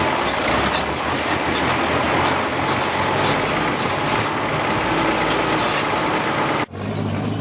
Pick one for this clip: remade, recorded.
recorded